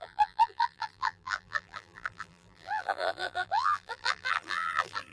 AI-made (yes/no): yes